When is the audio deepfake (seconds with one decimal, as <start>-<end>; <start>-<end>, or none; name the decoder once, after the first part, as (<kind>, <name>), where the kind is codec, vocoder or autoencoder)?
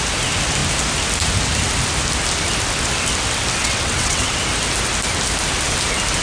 3.6-4.4 (vocoder, WaveNeXt)